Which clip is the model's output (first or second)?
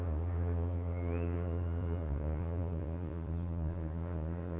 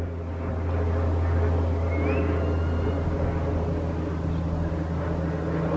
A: first